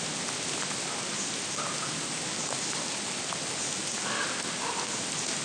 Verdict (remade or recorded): recorded